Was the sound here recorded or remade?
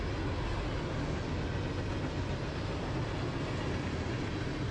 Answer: recorded